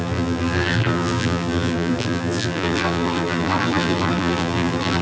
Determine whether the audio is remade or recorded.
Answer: remade